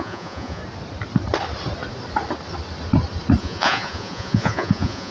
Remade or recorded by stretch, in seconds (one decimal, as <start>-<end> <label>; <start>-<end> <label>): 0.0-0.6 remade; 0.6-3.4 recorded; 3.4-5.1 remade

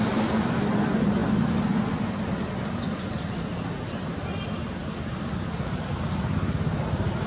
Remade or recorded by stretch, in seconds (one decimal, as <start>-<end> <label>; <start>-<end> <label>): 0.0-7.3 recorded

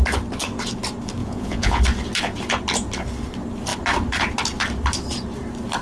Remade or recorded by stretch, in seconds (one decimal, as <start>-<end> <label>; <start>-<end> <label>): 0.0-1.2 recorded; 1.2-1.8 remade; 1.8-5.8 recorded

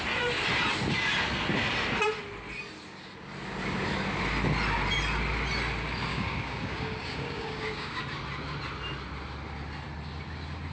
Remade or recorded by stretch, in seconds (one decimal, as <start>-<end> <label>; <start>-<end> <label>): 0.0-6.1 recorded; 6.1-8.0 remade; 8.0-10.7 recorded

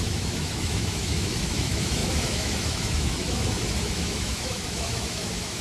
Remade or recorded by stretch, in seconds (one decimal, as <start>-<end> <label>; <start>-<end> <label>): 0.0-5.6 remade

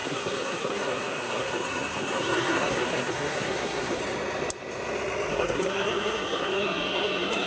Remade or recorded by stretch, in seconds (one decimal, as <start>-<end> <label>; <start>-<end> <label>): 0.0-4.0 remade; 4.0-5.3 recorded; 5.3-7.5 remade

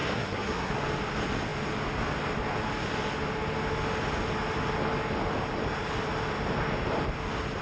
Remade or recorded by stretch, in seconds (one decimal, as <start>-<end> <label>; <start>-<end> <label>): 0.0-0.7 remade; 0.7-7.6 recorded